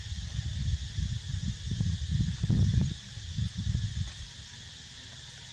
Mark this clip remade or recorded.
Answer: recorded